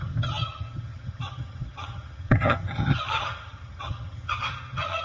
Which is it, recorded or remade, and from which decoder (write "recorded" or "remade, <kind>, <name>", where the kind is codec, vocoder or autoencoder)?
remade, vocoder, HiFi-GAN